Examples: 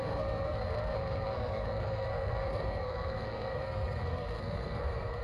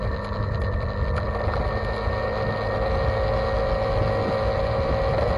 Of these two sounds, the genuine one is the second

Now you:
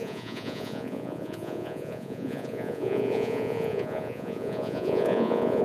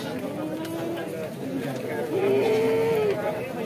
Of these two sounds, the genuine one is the second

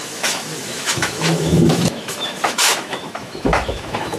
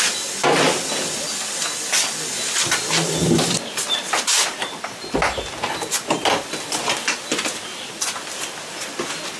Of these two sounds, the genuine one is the second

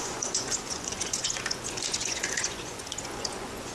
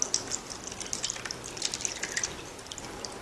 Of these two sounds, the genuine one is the second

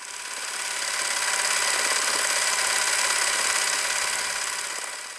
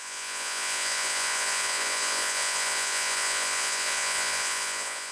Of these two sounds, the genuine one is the first